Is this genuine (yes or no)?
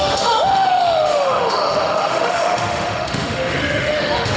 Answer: no